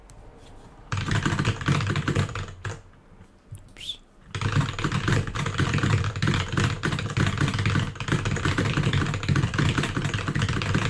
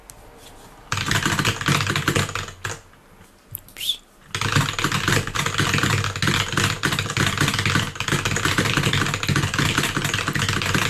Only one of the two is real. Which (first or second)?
second